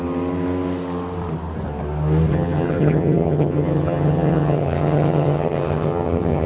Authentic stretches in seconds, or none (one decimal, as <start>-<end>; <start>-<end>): 0.0-2.3